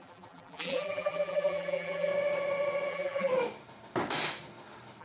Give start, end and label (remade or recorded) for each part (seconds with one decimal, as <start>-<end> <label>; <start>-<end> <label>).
0.0-2.1 remade; 2.1-2.9 recorded; 2.9-3.3 remade; 3.3-5.0 recorded